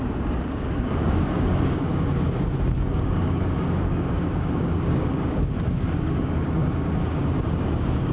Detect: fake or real fake